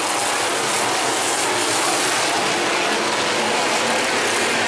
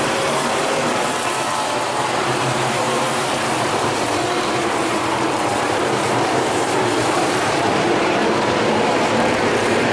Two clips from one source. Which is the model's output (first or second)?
second